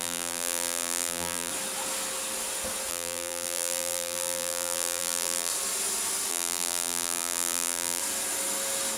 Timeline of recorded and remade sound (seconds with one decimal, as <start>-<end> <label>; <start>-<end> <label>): 0.0-1.5 remade; 1.5-2.9 recorded; 2.9-5.5 remade; 5.5-6.3 recorded; 6.3-8.0 remade; 8.0-9.0 recorded